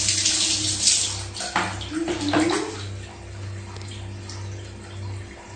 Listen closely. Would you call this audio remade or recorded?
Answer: recorded